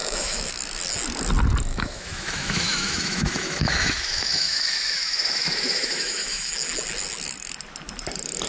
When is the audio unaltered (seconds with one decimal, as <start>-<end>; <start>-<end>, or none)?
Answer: 0.5-1.7; 6.5-8.5